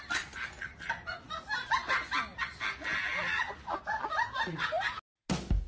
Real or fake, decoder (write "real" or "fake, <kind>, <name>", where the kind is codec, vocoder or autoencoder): real